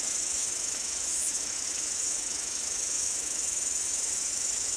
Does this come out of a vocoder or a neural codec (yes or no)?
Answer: yes